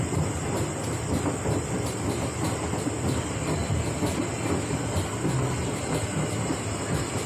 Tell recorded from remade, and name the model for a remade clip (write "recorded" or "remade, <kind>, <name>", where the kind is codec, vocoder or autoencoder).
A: recorded